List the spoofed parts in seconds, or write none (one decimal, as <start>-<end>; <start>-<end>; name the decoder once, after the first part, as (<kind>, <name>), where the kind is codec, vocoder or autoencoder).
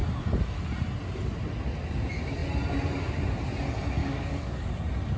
4.0-4.7 (codec, DAC)